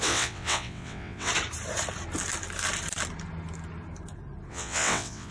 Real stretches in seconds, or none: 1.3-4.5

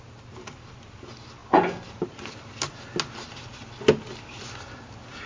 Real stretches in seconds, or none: 0.0-5.3

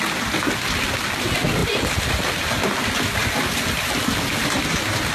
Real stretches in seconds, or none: 0.0-5.1

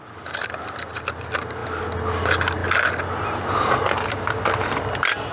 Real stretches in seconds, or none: 0.0-5.3

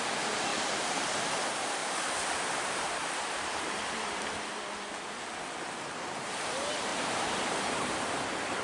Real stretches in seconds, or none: 0.0-0.5; 1.1-1.8; 4.3-6.9; 7.6-8.6

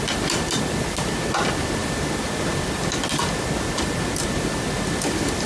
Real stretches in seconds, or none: 0.0-5.5